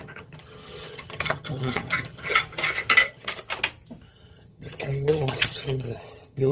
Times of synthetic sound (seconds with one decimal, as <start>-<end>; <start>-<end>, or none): 0.0-2.4; 3.0-3.5; 4.1-6.5